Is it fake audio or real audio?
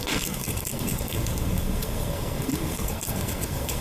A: fake